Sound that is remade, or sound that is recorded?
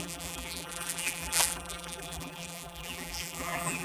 remade